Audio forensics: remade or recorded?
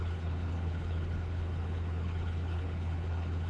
remade